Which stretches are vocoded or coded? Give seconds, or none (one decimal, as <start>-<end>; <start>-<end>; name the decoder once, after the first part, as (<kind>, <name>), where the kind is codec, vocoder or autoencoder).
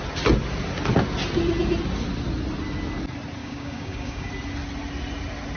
3.4-4.3 (codec, DAC)